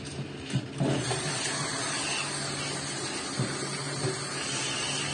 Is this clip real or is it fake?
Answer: real